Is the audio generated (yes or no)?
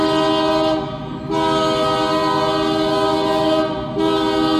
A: no